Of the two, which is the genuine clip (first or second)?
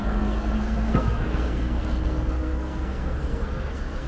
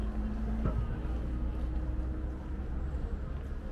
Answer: second